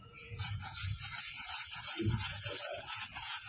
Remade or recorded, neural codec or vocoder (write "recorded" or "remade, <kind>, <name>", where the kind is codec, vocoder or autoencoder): remade, vocoder, Vocos